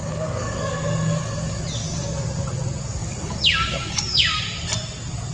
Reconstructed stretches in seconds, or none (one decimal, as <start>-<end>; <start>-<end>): 0.0-1.6; 3.0-4.4